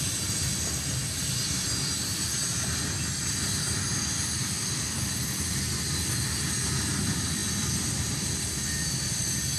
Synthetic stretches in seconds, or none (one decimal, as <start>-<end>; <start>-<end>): none